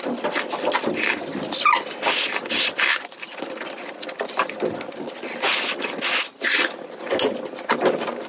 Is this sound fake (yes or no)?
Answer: no